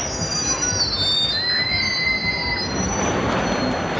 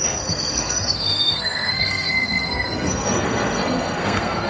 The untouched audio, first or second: first